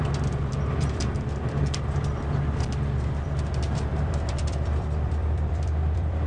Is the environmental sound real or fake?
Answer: fake